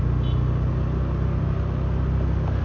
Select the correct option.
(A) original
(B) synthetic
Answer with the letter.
A